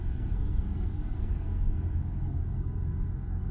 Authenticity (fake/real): fake